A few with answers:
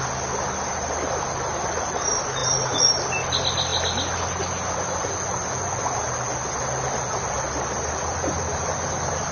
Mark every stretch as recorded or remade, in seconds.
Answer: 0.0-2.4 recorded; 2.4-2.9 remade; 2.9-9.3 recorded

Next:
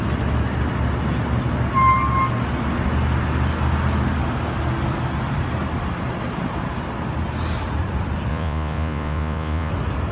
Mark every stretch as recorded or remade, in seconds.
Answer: 0.0-8.3 recorded; 8.3-9.7 remade; 9.7-10.1 recorded

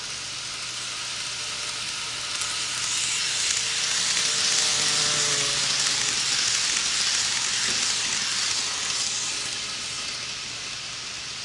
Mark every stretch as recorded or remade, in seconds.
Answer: 0.0-11.4 recorded